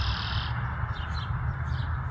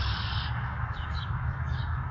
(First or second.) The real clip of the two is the first